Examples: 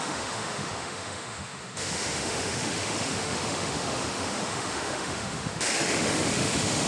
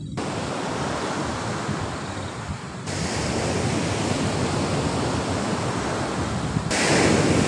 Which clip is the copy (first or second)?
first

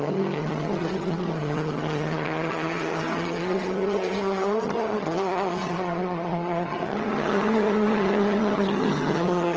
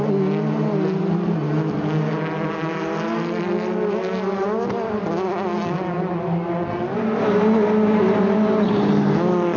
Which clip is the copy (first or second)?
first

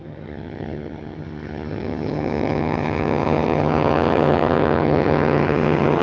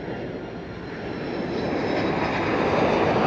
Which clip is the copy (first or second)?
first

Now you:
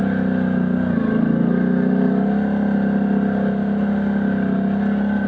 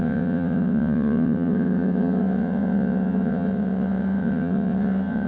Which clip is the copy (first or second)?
second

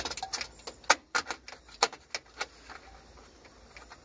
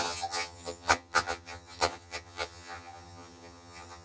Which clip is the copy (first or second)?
second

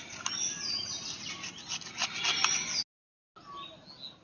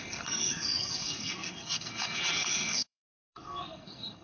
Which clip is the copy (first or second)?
second